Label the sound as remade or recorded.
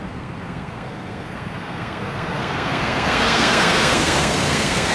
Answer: remade